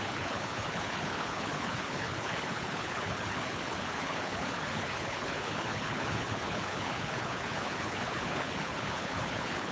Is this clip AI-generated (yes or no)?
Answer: yes